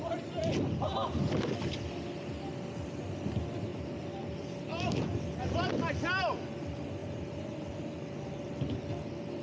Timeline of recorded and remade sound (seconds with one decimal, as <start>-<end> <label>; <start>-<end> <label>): 0.0-9.4 recorded